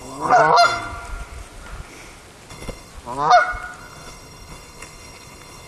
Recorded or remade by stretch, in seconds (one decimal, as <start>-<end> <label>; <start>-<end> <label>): 0.0-0.4 remade; 0.4-2.5 recorded; 2.5-2.9 remade; 2.9-3.8 recorded; 3.8-5.7 remade